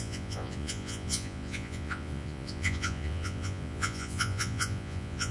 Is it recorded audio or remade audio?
remade